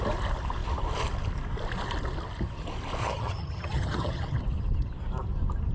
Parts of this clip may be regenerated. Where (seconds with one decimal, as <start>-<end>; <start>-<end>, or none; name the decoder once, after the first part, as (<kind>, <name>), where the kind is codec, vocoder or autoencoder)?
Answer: 3.0-4.4 (vocoder, HiFi-GAN)